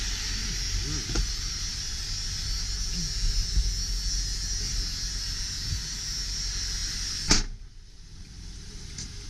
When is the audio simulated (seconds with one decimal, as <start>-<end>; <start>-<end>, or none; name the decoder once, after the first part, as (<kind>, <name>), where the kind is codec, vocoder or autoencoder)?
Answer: none